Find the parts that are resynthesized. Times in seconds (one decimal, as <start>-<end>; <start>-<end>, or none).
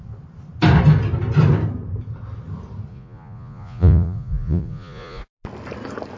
2.9-5.2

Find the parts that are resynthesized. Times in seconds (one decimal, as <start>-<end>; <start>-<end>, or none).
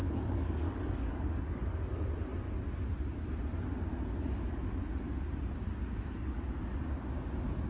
0.0-1.8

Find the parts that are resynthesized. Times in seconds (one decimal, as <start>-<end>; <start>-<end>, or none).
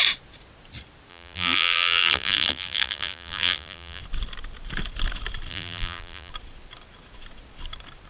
1.1-4.0; 5.5-6.3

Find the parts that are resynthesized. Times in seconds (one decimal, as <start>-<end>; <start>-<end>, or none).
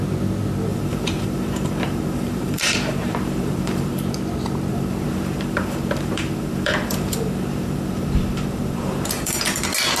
0.7-4.0; 4.7-9.6